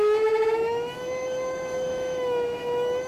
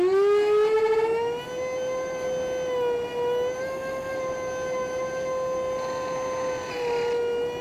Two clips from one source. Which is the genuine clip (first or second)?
second